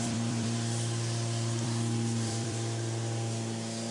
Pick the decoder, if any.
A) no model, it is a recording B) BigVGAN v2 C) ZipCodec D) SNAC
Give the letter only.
B